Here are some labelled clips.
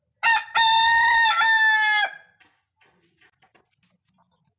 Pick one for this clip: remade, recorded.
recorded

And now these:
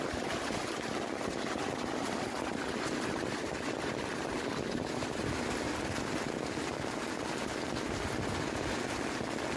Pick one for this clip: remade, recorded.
recorded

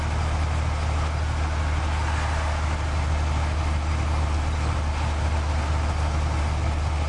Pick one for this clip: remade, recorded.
recorded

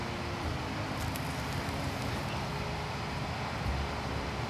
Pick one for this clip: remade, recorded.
recorded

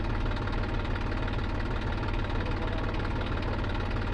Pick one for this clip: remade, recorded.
recorded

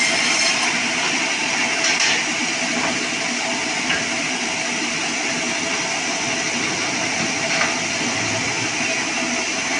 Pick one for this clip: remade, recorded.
recorded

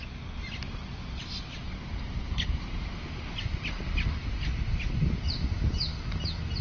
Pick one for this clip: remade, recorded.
recorded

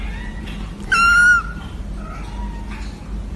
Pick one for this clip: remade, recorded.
recorded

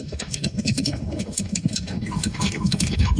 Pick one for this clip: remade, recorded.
remade